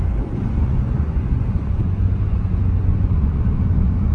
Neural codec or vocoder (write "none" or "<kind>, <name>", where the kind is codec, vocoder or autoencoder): vocoder, Vocos